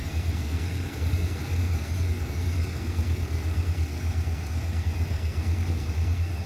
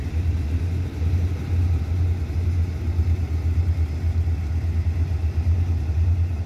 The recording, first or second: second